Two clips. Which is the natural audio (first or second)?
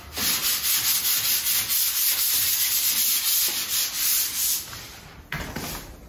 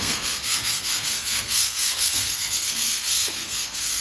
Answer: first